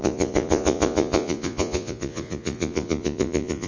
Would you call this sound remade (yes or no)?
yes